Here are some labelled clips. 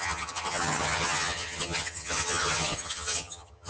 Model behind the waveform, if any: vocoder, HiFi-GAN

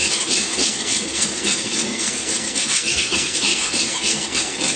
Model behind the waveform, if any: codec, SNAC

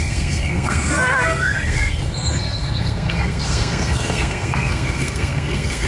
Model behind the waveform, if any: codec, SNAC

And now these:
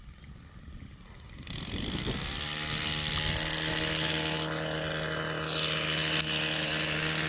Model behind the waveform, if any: none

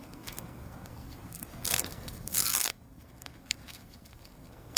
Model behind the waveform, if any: codec, SNAC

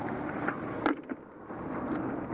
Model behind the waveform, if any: none